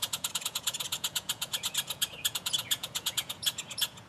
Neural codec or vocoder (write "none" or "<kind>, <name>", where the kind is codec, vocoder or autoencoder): vocoder, Vocos